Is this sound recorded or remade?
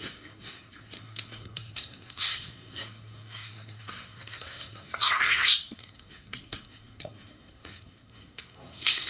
remade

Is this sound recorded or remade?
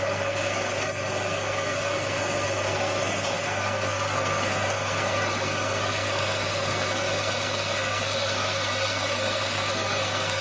remade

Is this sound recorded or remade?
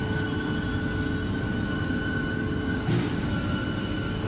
recorded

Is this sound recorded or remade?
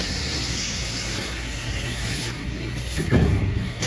remade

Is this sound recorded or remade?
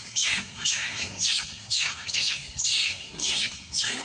remade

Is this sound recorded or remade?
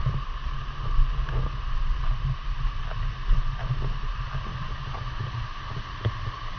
recorded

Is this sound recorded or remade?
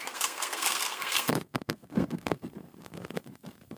remade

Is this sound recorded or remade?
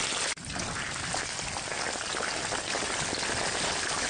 recorded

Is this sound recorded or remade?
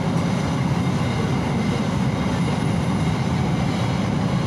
recorded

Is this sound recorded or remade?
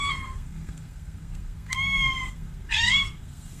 remade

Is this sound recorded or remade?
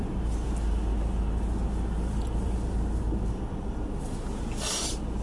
recorded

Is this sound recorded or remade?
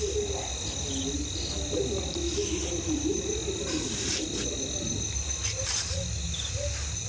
recorded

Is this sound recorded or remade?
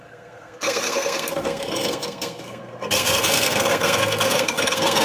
remade